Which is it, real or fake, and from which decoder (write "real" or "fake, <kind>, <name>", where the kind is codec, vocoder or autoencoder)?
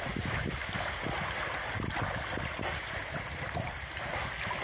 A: real